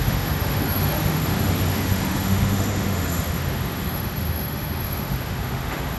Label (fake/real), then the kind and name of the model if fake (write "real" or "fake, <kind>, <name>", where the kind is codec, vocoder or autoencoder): fake, autoencoder, DAC-VAE